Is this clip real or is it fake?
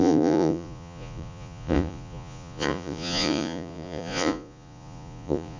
fake